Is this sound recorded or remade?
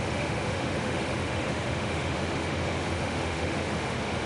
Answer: remade